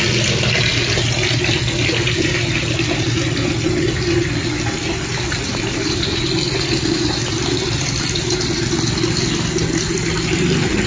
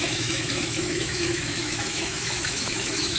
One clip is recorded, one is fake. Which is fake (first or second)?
second